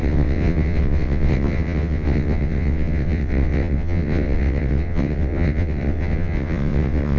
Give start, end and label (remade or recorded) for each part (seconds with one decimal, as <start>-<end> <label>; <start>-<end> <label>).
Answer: 0.0-7.2 remade